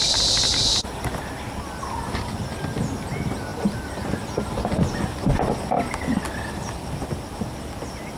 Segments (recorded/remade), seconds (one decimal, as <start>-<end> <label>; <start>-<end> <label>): 0.0-8.2 recorded